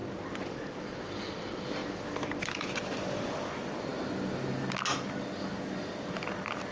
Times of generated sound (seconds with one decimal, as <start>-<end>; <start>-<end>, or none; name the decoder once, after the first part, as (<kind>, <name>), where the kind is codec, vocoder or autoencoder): none